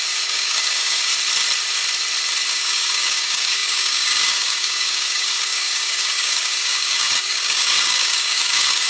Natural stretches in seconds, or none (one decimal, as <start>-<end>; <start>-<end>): 1.1-2.5